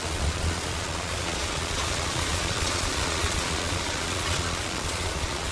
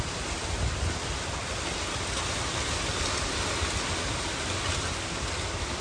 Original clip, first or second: second